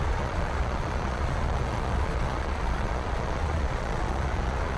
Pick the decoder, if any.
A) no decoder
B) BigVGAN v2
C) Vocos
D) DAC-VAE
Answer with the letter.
C